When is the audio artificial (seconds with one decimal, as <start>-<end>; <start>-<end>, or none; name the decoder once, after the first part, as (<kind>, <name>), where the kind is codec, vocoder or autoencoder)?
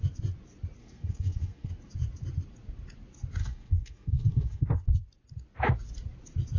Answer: 0.8-1.7 (codec, SNAC); 3.4-4.7